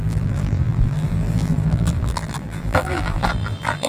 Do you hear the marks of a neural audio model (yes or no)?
yes